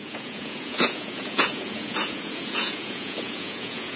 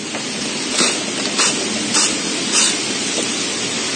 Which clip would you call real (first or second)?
second